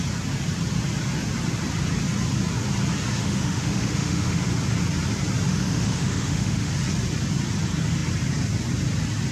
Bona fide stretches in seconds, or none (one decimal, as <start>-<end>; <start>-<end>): 0.0-3.2; 4.4-5.5; 6.7-9.3